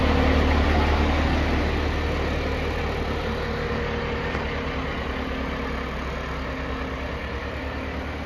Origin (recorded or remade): recorded